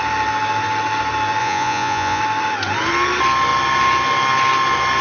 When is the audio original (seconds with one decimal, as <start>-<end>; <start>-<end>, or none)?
0.0-1.4; 2.2-5.0